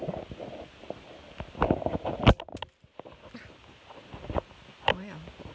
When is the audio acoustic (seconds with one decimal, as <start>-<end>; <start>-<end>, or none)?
0.0-5.5